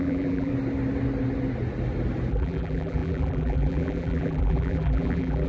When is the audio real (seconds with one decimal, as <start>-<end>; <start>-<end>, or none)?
0.5-2.3